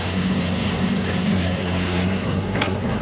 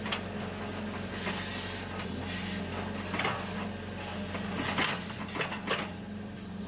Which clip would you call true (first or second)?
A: second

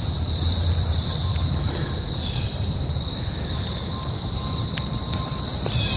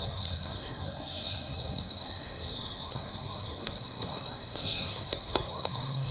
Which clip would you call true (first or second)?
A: first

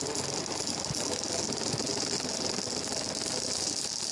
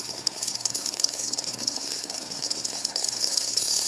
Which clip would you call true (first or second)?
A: first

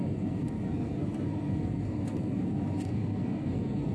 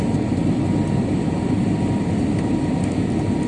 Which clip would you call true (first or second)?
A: second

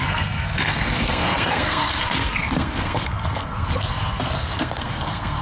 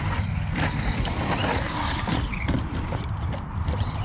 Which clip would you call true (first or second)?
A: second